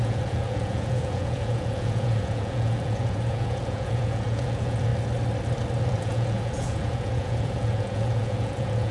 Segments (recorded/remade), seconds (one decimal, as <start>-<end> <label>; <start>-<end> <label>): 0.0-4.9 remade; 4.9-5.9 recorded; 5.9-8.9 remade

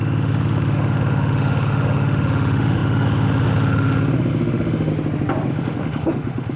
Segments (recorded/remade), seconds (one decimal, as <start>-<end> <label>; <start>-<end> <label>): 0.0-4.9 remade; 4.9-5.5 recorded; 5.5-6.6 remade